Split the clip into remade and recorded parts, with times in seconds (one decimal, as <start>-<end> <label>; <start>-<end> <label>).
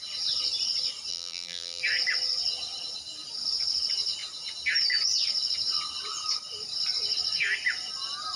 0.0-1.1 recorded; 1.1-1.8 remade; 1.8-8.4 recorded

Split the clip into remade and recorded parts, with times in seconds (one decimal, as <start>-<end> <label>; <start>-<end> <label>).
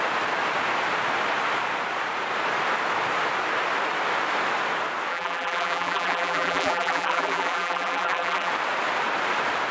0.0-5.1 recorded; 5.1-8.5 remade; 8.5-9.7 recorded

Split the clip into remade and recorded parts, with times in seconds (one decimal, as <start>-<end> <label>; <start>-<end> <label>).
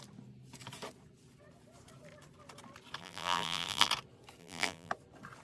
0.0-3.0 recorded; 3.0-3.9 remade; 3.9-4.4 recorded; 4.4-4.9 remade; 4.9-5.4 recorded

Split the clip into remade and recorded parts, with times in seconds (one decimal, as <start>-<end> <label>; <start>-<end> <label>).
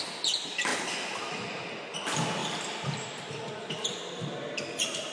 0.0-2.4 recorded; 2.4-3.5 remade; 3.5-5.1 recorded